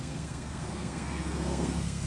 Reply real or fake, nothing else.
fake